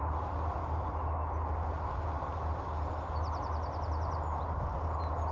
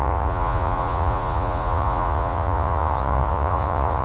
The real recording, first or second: first